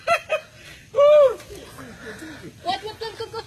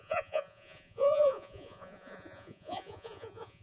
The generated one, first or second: second